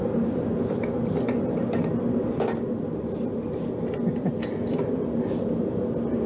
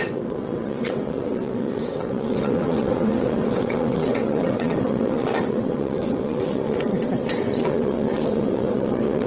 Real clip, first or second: first